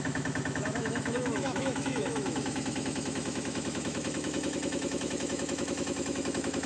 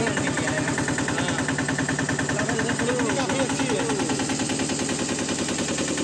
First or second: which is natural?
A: second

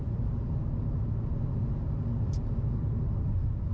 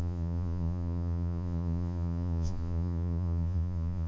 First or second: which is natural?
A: first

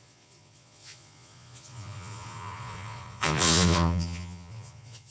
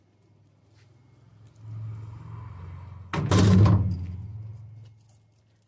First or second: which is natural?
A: second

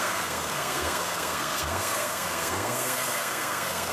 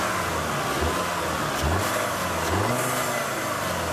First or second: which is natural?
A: second